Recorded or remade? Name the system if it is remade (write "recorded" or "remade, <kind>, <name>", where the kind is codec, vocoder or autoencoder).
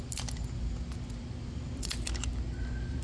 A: recorded